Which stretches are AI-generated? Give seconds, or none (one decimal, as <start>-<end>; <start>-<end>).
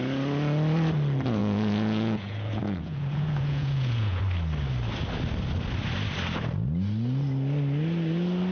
1.4-4.2